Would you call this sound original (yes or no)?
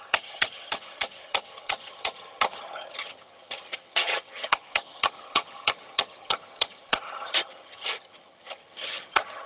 no